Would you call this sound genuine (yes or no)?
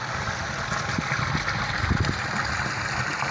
yes